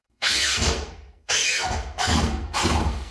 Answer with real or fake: fake